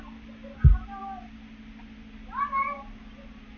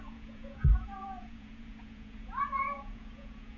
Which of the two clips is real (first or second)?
first